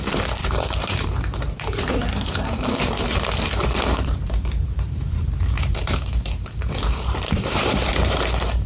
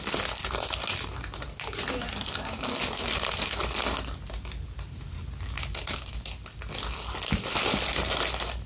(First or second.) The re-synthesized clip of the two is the first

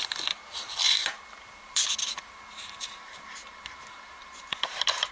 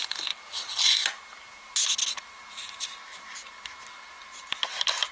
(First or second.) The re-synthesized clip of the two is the first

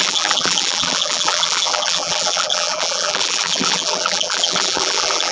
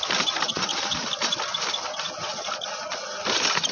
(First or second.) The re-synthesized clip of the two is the first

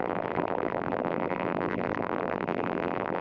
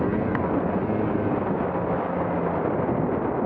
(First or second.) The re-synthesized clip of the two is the first